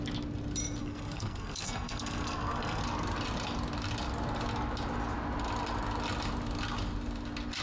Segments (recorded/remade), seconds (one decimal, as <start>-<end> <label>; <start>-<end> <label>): 0.0-0.8 recorded; 0.8-2.8 remade; 2.8-7.6 recorded